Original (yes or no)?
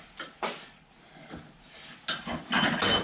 yes